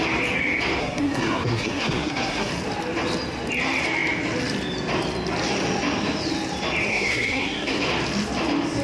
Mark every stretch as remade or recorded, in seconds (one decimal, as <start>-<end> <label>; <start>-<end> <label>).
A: 0.0-0.8 recorded; 0.8-2.5 remade; 2.5-6.9 recorded; 6.9-7.8 remade; 7.8-8.8 recorded